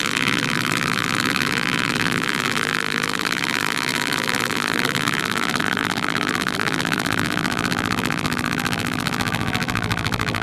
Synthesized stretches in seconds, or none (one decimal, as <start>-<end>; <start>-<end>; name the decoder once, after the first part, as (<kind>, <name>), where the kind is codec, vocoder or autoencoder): 0.0-10.4 (vocoder, BigVGAN v2)